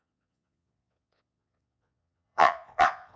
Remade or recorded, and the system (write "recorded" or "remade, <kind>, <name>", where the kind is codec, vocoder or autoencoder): remade, vocoder, Vocos